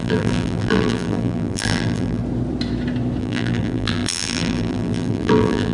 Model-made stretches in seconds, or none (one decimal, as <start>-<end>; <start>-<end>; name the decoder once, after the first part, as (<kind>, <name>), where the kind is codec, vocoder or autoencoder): 0.0-2.2 (vocoder, BigVGAN v2); 3.2-5.7